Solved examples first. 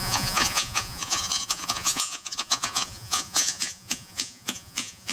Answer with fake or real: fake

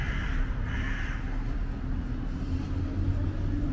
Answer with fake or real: real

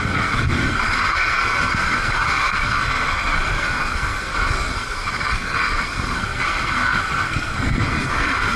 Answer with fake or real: fake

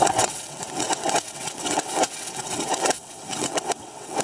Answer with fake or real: fake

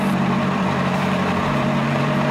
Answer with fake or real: fake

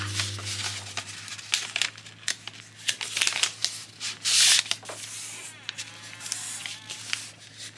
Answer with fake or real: real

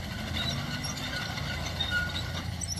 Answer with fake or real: real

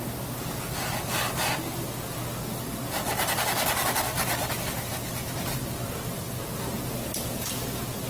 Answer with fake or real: real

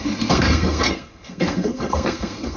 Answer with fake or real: fake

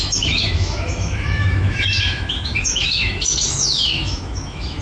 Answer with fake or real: fake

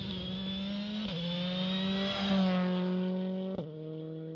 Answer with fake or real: real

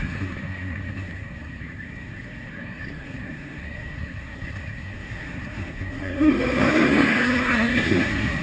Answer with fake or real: fake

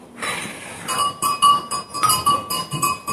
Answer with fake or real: real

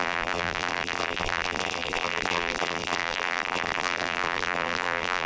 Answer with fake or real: fake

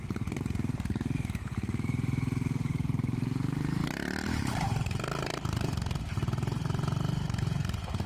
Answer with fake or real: fake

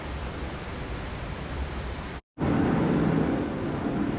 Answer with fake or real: fake